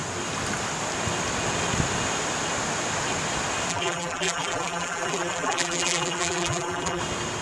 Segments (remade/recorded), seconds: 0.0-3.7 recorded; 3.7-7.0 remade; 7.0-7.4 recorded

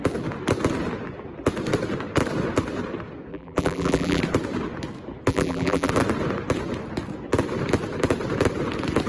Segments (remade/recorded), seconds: 0.0-3.3 recorded; 3.3-4.2 remade; 4.2-5.3 recorded; 5.3-5.9 remade; 5.9-9.1 recorded

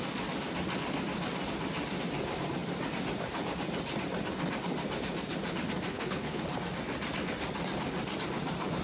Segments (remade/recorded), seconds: 0.0-5.9 recorded; 5.9-6.4 remade; 6.4-8.8 recorded